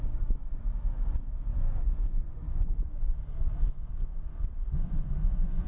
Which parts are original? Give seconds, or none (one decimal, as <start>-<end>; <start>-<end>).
0.0-1.5; 3.0-3.4; 3.9-4.7